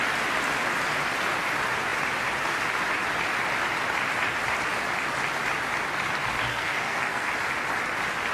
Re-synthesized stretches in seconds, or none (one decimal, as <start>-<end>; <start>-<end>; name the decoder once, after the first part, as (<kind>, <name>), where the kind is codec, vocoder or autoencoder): 6.5-7.3 (codec, SNAC)